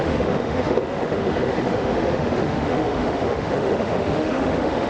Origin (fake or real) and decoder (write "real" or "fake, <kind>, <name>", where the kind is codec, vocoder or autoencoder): fake, autoencoder, DAC-VAE